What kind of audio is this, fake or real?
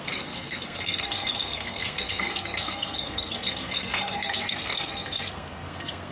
fake